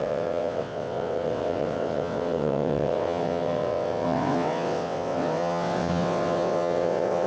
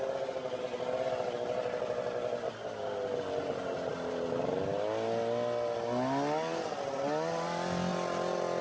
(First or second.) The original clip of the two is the second